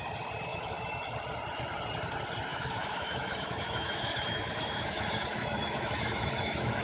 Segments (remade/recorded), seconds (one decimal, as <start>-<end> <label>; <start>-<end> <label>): 0.0-0.5 recorded; 0.5-1.0 remade; 1.0-2.5 recorded; 2.5-6.8 remade